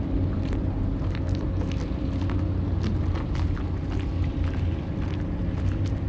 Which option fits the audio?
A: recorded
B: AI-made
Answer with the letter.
A